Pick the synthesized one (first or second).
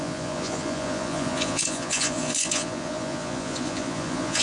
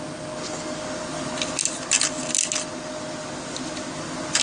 first